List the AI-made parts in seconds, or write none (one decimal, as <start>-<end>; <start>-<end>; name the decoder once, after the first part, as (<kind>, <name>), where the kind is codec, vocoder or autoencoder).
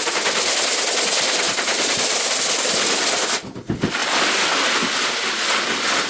4.0-4.6 (vocoder, BigVGAN v2)